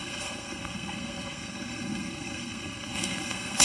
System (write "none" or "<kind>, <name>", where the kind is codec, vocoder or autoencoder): codec, SNAC